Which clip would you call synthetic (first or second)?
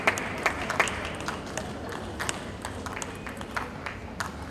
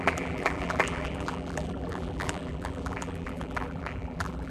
second